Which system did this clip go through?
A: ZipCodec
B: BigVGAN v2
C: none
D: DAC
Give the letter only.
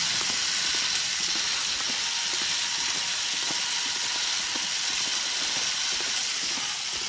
C